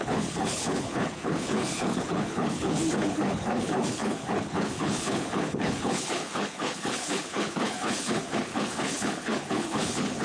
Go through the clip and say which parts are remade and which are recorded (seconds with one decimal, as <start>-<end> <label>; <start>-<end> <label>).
0.0-10.2 remade